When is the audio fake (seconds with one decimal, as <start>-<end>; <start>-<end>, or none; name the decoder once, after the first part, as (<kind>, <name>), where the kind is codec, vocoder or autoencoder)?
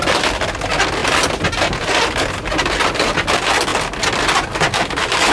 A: none